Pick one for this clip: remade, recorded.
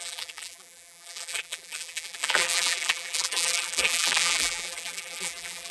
remade